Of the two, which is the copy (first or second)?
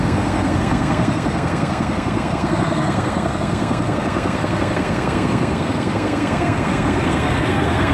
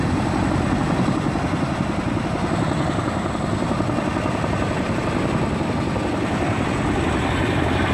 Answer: first